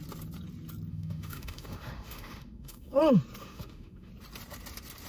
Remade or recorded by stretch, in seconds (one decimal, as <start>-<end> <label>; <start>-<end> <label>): 0.0-0.9 recorded; 0.9-3.0 remade; 3.0-3.4 recorded; 3.4-4.1 remade; 4.1-5.1 recorded